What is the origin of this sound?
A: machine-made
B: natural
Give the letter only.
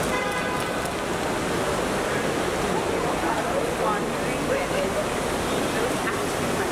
B